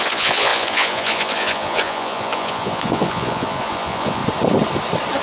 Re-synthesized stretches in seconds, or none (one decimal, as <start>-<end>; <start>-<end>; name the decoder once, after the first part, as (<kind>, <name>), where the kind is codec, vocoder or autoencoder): 0.0-4.2 (vocoder, Vocos)